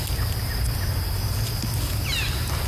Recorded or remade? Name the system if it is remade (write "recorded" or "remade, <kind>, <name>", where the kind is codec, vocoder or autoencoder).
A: recorded